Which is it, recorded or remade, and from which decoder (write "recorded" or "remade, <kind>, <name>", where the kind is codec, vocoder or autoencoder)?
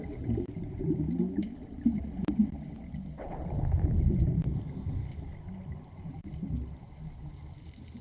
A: remade, vocoder, BigVGAN v2